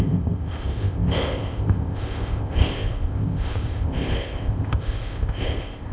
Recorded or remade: remade